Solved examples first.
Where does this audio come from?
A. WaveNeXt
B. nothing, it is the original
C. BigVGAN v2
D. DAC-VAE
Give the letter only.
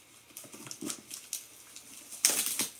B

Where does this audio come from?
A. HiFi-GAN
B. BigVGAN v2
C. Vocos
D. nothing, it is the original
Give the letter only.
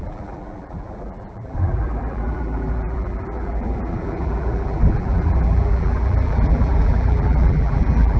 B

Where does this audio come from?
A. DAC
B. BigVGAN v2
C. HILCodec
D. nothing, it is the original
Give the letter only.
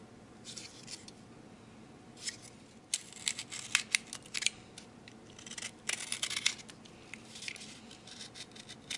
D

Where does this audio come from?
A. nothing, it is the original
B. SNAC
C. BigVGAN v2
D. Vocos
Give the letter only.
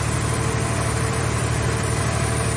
C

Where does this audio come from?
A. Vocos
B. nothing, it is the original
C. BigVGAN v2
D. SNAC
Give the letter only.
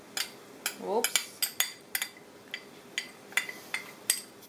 B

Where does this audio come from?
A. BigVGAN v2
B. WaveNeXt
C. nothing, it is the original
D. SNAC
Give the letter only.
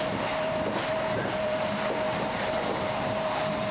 A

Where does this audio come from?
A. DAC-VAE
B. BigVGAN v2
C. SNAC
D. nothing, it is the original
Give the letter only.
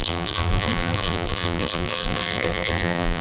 B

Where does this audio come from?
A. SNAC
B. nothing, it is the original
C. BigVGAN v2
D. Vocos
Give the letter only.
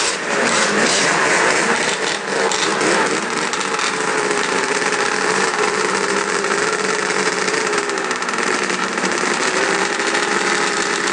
C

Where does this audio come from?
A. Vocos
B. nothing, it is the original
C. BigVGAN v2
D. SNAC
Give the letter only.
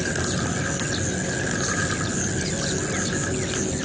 B